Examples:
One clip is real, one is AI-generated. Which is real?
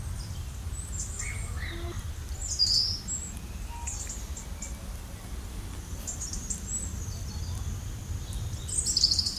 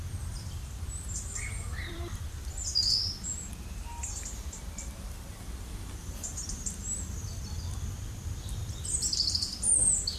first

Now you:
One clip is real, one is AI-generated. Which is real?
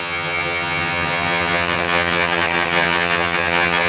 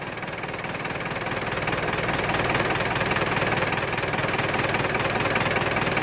second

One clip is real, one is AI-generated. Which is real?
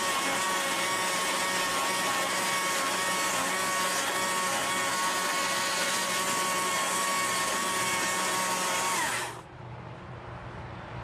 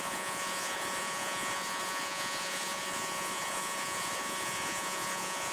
first